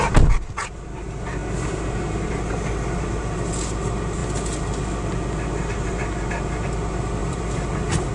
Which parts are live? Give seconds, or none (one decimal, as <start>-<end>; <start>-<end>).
0.0-7.2